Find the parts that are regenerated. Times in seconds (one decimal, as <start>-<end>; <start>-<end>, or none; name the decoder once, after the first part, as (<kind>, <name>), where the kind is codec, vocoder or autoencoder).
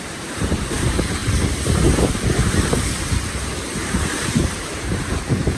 0.0-1.2 (vocoder, BigVGAN v2); 3.1-5.6